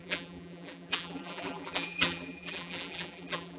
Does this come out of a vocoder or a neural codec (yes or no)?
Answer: yes